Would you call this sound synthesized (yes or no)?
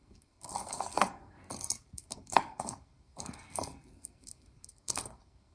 yes